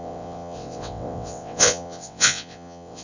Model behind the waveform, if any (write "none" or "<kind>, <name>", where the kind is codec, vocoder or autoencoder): vocoder, WaveNeXt